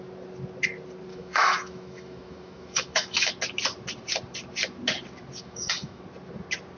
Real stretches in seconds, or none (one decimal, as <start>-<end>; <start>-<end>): 0.0-1.1; 3.3-5.4; 6.0-6.8